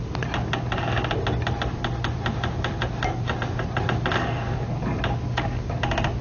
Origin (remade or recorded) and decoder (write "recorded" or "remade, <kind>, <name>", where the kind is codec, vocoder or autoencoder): recorded